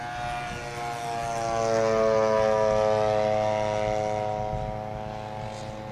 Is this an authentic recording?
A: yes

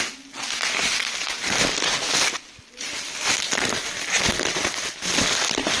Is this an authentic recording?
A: yes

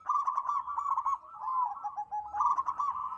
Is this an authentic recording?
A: yes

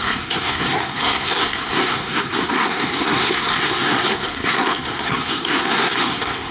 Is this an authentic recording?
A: no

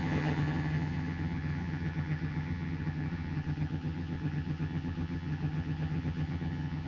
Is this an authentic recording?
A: no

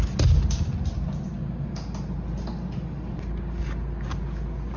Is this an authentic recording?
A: yes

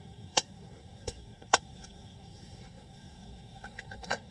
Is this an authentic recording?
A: no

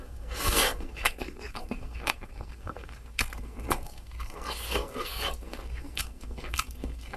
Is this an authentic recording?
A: no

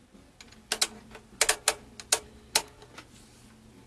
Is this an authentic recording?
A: yes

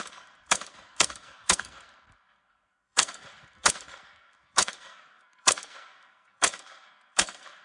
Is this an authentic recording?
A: no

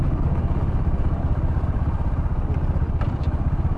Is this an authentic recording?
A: no